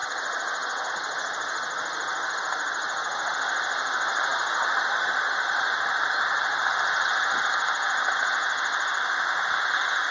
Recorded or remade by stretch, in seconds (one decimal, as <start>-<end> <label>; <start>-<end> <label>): 0.0-10.1 recorded